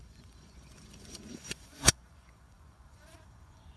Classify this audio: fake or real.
fake